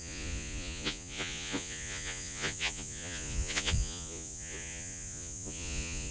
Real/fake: fake